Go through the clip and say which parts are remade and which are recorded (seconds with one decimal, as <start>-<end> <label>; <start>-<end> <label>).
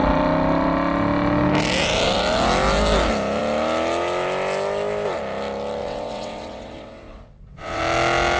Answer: 0.0-5.8 recorded; 5.8-7.8 remade; 7.8-8.4 recorded